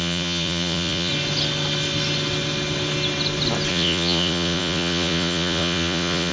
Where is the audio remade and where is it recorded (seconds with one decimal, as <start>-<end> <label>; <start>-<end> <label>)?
0.0-1.1 remade; 1.1-3.7 recorded; 3.7-6.3 remade

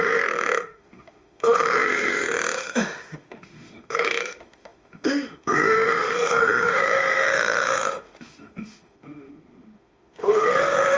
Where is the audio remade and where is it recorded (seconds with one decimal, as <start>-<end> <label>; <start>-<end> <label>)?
0.0-11.0 remade

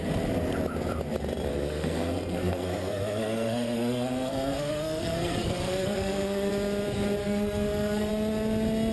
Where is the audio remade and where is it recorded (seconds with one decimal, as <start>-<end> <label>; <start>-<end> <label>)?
0.0-1.5 recorded; 1.5-6.5 remade; 6.5-7.2 recorded; 7.2-8.1 remade; 8.1-8.9 recorded

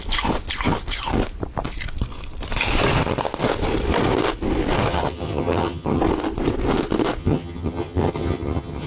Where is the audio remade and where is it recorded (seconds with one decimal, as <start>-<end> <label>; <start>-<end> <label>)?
0.0-4.9 recorded; 4.9-6.0 remade; 6.0-7.2 recorded; 7.2-8.9 remade

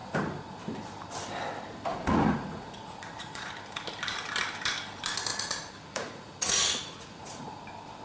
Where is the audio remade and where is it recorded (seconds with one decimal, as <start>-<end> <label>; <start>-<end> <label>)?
0.0-0.6 remade; 0.6-1.9 recorded; 1.9-3.5 remade; 3.5-5.3 recorded; 5.3-7.5 remade; 7.5-8.0 recorded

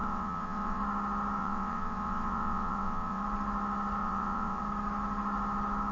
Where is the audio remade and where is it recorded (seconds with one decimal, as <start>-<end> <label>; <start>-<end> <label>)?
0.0-0.8 remade; 0.8-1.4 recorded; 1.4-3.2 remade; 3.2-4.0 recorded; 4.0-4.6 remade; 4.6-5.9 recorded

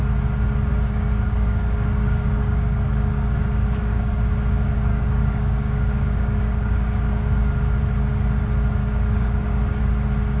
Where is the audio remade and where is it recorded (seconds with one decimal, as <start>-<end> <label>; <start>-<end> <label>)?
0.0-0.7 recorded; 0.7-4.3 remade; 4.3-4.9 recorded; 4.9-7.8 remade; 7.8-8.8 recorded; 8.8-9.8 remade; 9.8-10.4 recorded